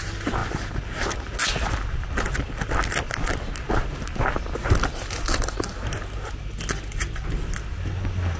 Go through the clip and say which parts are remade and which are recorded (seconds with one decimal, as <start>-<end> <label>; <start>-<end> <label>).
0.0-8.4 recorded